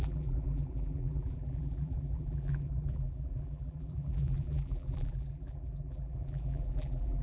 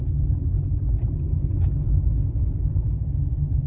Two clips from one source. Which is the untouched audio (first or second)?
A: second